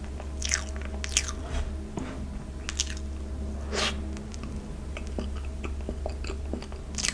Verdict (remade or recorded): recorded